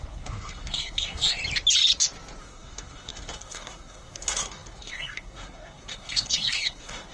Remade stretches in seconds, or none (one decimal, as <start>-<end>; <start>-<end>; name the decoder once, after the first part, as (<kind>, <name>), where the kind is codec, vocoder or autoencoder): 0.0-1.4 (codec, SNAC); 2.4-7.1